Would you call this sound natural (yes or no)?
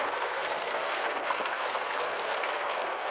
no